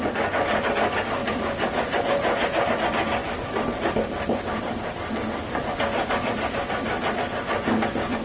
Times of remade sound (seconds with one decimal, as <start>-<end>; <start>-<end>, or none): 1.2-2.7